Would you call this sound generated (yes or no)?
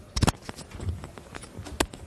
no